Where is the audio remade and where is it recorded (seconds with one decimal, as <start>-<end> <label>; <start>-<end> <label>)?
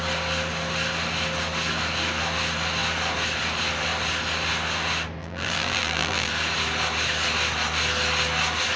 0.0-5.2 recorded; 5.2-6.3 remade; 6.3-8.8 recorded